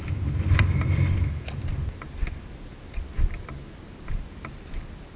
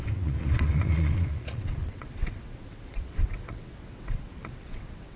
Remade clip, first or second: second